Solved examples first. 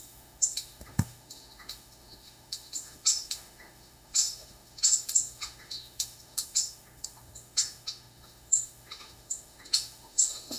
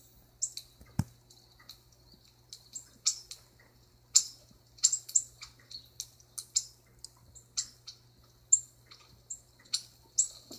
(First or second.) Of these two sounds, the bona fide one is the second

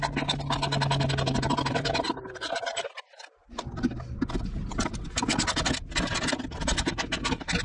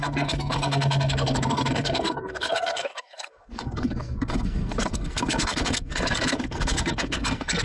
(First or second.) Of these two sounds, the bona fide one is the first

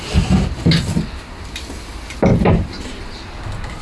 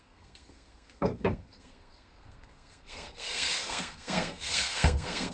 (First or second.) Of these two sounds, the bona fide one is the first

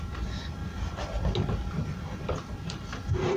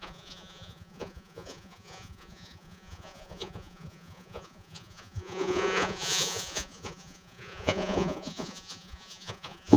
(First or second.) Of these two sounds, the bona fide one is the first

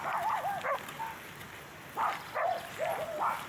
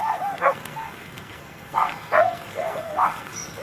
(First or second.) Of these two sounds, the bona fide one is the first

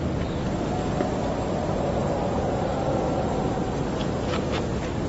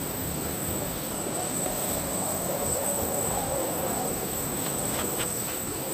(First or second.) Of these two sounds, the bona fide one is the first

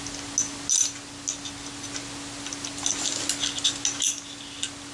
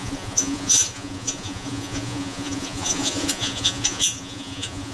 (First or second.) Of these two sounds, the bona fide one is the first